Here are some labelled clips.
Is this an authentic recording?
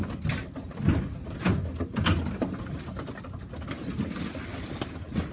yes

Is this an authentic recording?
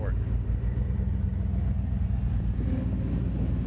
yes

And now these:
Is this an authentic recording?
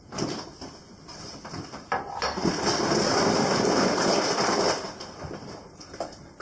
yes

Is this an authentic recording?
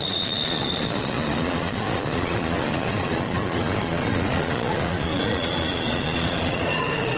no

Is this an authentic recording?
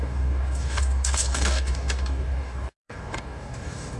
no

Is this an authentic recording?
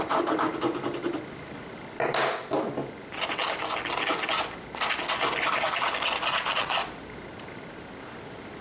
yes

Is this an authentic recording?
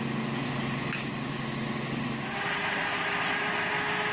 yes